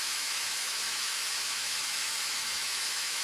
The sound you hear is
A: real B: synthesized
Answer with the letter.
B